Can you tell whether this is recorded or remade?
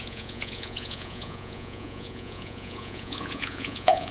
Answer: remade